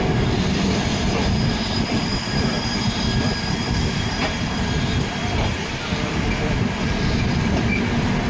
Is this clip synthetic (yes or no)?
yes